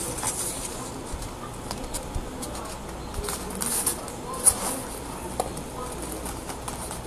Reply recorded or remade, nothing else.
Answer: recorded